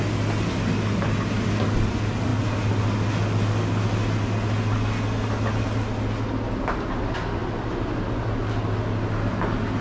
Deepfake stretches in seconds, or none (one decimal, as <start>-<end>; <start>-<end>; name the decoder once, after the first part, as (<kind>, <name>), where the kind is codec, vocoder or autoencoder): none